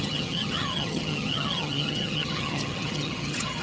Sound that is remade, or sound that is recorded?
remade